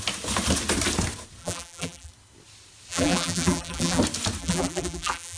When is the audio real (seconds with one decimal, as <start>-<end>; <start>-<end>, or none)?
0.0-1.4; 2.1-2.9; 4.0-4.4